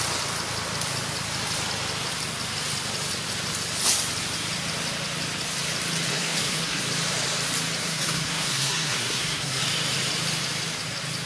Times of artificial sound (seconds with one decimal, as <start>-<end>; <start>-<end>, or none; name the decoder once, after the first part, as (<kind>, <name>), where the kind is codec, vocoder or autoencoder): 6.1-6.8 (codec, SNAC); 7.8-9.6